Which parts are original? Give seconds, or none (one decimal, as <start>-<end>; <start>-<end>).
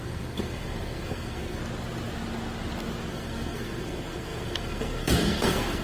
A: 1.6-3.1